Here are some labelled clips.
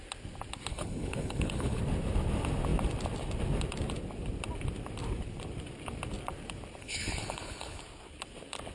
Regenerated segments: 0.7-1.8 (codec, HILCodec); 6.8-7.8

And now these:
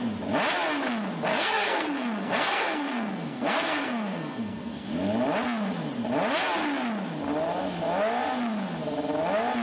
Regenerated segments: 1.3-4.9 (codec, SNAC)

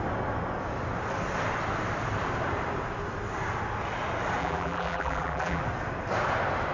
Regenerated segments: 4.4-5.6 (vocoder, BigVGAN v2)

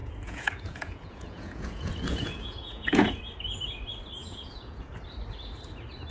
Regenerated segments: 0.0-3.2 (vocoder, Vocos); 4.2-5.0

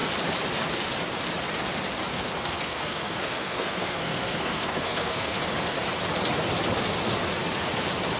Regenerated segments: 2.1-5.4 (codec, SNAC)

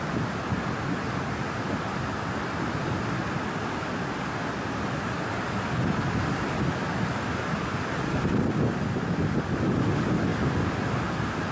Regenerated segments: none